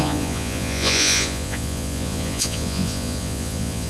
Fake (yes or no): yes